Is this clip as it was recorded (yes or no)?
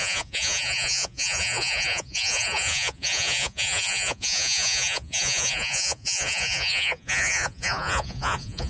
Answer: no